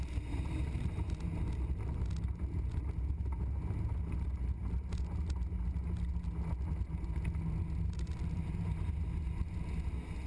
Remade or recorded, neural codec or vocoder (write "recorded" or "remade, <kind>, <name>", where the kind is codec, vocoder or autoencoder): recorded